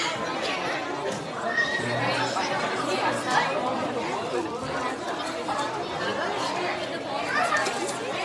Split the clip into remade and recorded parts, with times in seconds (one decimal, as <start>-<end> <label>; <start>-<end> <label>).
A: 0.0-8.2 recorded